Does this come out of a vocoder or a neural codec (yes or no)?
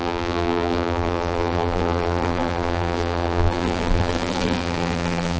yes